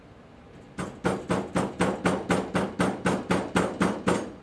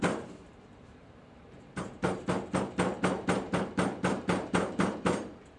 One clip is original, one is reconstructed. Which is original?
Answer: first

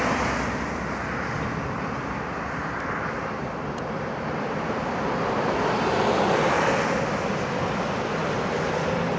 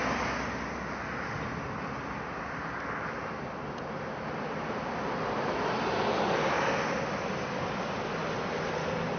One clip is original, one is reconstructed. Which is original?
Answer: second